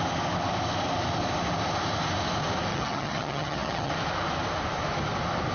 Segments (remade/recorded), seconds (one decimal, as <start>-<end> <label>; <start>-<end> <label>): 0.0-2.7 recorded; 2.7-3.9 remade; 3.9-5.5 recorded